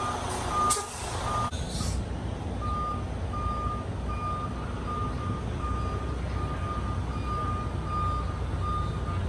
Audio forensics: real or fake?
real